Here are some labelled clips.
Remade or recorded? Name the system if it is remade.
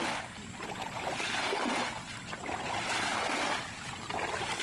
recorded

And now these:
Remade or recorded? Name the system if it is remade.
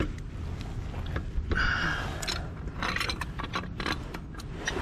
recorded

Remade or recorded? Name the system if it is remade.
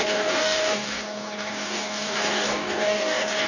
remade, codec, DAC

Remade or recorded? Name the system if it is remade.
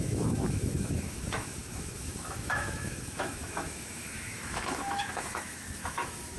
remade, autoencoder, DAC-VAE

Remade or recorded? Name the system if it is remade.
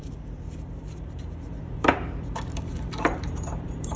remade, vocoder, BigVGAN v2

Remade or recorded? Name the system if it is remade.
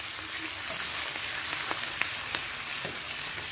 recorded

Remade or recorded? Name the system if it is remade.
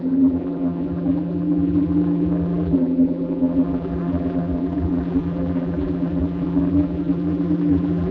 remade, vocoder, BigVGAN v2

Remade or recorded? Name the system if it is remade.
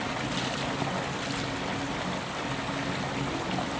recorded